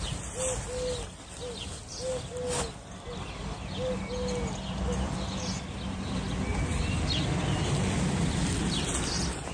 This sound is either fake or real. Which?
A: real